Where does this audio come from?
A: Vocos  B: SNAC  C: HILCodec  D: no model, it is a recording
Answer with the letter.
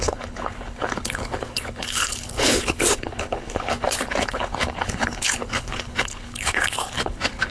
C